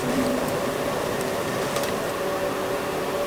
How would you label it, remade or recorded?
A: recorded